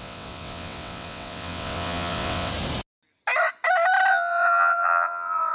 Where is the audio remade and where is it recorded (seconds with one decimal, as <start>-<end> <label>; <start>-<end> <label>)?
0.0-2.5 remade; 2.5-4.1 recorded; 4.1-5.5 remade